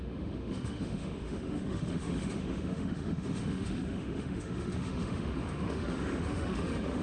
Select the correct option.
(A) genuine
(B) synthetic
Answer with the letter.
B